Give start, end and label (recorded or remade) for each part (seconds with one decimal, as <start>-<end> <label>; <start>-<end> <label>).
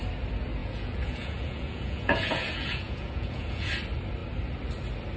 0.0-0.6 recorded; 0.6-3.7 remade; 3.7-5.2 recorded